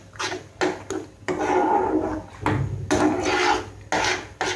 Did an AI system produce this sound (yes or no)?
no